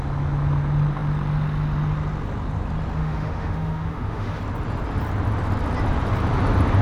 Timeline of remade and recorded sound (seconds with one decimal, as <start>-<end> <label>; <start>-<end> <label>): 0.0-3.0 recorded; 3.0-4.4 remade; 4.4-6.8 recorded